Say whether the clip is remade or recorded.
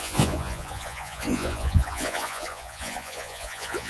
remade